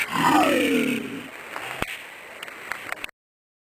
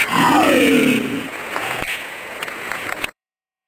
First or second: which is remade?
second